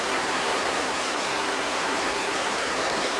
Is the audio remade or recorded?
remade